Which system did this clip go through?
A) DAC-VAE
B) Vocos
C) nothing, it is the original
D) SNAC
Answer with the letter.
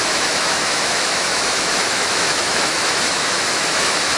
A